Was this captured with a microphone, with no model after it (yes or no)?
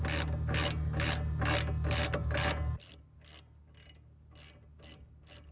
yes